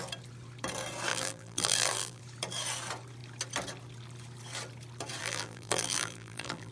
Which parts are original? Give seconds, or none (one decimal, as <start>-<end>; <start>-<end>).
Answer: 0.0-1.1; 2.2-5.2